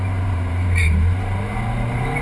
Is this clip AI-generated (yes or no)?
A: yes